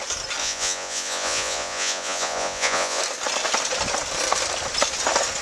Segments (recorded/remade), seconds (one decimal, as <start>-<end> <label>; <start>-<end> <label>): 0.0-0.4 recorded; 0.4-3.0 remade; 3.0-5.4 recorded